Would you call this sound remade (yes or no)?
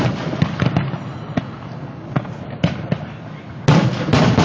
no